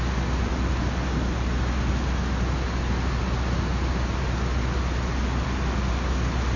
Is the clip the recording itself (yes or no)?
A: yes